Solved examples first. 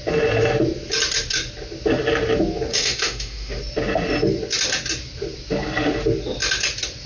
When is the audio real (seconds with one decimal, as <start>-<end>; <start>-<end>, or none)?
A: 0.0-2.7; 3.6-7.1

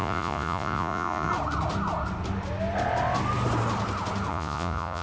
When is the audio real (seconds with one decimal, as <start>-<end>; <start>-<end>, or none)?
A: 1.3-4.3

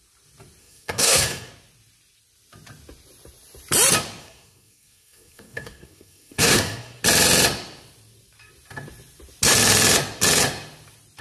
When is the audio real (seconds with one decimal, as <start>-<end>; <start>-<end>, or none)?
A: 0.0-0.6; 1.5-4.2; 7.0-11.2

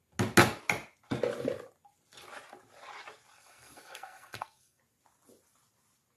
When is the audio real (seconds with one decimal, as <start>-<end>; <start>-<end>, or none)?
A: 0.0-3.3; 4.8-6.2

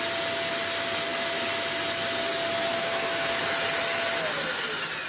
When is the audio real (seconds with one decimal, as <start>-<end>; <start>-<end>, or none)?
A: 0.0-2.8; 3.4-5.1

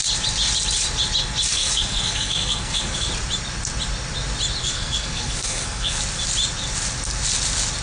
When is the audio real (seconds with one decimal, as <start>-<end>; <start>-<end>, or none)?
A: 0.0-1.5; 3.1-4.6; 6.0-7.8

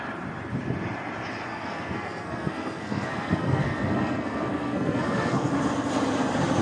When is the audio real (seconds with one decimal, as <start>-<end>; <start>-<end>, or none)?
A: 0.0-1.5; 5.5-6.6

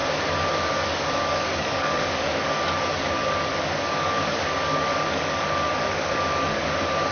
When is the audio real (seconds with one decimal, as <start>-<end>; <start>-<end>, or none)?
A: 0.0-0.5